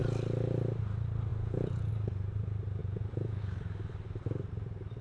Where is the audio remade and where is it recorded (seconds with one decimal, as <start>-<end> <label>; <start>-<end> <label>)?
0.0-1.3 recorded; 1.3-1.9 remade; 1.9-2.8 recorded; 2.8-3.4 remade; 3.4-5.0 recorded